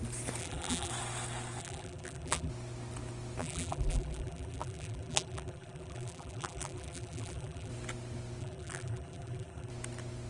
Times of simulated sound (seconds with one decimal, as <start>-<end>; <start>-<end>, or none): 0.4-0.9; 1.6-2.5; 3.4-7.7; 8.4-9.7